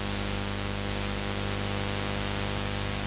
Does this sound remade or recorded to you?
recorded